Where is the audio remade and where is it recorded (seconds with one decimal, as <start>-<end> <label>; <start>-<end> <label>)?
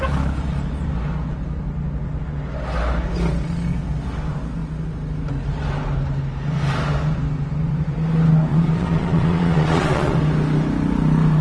0.0-8.5 recorded; 8.5-10.2 remade; 10.2-11.4 recorded